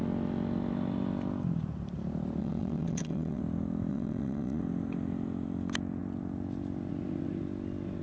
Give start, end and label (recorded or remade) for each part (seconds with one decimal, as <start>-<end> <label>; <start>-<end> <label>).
0.0-2.4 recorded; 2.4-3.4 remade; 3.4-3.9 recorded; 3.9-4.6 remade; 4.6-8.0 recorded